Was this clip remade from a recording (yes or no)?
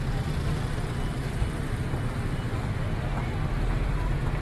no